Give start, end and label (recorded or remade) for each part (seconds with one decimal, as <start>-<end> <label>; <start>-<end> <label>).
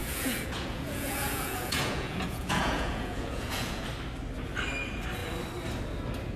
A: 0.0-3.8 remade; 3.8-6.4 recorded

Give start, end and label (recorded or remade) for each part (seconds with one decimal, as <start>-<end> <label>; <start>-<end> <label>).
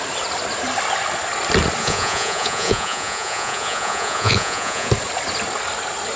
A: 0.0-1.8 recorded; 1.8-4.9 remade; 4.9-6.2 recorded